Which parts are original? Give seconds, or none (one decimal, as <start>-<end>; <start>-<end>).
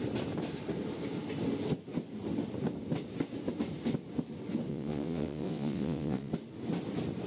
0.0-4.7; 6.3-7.3